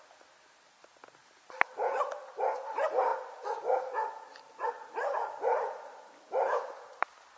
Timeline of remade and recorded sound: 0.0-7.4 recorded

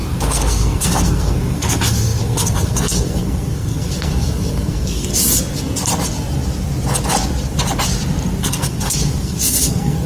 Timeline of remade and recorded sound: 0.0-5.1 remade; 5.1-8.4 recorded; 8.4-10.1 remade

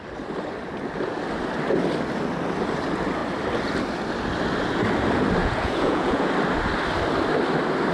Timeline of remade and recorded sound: 0.0-5.4 recorded; 5.4-6.3 remade; 6.3-7.9 recorded

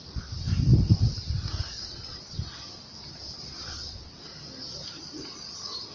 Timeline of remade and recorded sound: 0.0-5.9 recorded

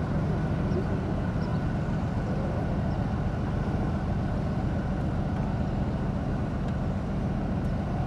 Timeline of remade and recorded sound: 0.0-8.1 recorded

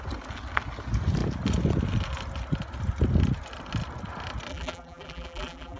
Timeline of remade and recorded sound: 0.0-4.5 recorded; 4.5-5.8 remade

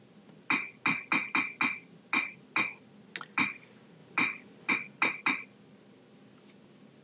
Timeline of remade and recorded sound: 0.0-7.0 recorded